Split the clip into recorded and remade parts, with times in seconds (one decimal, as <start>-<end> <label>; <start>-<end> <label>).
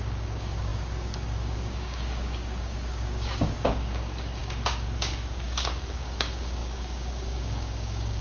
0.0-8.2 remade